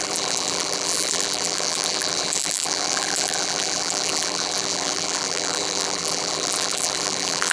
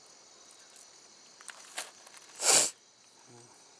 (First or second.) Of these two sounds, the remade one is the first